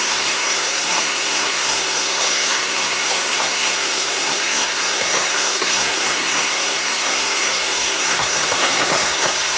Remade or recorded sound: remade